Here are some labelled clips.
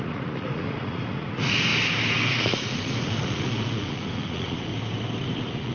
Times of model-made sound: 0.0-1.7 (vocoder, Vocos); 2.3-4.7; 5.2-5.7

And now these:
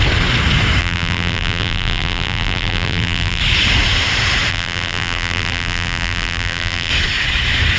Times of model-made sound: 0.8-3.4 (vocoder, BigVGAN v2); 4.5-6.9